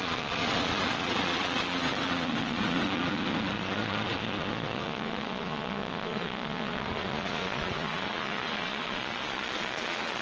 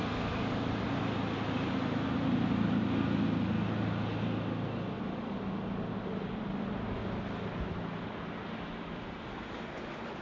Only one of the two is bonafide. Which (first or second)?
second